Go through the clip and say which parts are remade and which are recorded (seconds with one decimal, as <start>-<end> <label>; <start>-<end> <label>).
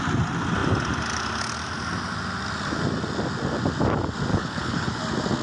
0.0-4.3 recorded; 4.3-5.0 remade; 5.0-5.4 recorded